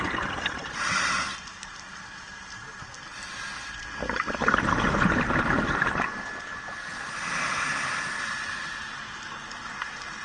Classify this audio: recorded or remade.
recorded